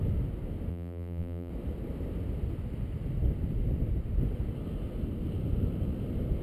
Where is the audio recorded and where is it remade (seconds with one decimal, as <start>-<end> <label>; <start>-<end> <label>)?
0.0-0.7 recorded; 0.7-1.5 remade; 1.5-6.4 recorded